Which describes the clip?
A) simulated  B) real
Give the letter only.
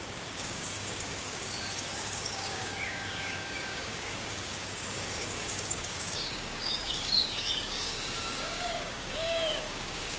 A